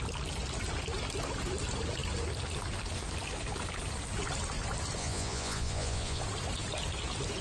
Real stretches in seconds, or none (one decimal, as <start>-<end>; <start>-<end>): 0.0-5.0; 6.2-7.4